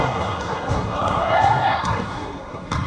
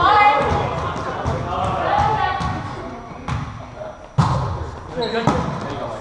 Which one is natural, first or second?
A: second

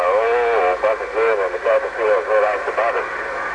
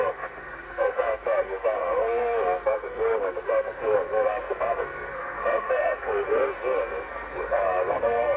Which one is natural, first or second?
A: first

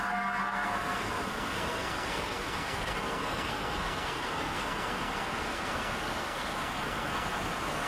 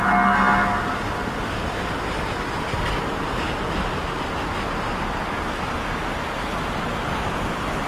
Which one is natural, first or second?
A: second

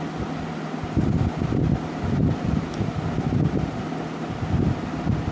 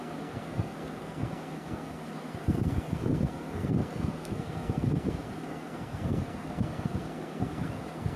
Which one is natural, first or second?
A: first